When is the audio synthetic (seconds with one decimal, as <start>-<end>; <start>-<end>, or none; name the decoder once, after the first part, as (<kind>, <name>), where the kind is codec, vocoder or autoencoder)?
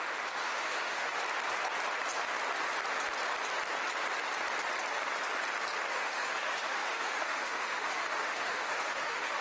0.0-1.2 (autoencoder, DAC-VAE); 5.9-9.4